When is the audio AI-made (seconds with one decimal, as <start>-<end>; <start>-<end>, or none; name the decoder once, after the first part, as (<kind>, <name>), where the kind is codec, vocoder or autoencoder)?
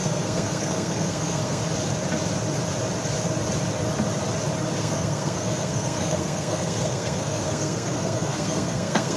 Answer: 0.0-1.6 (codec, SNAC); 4.8-9.2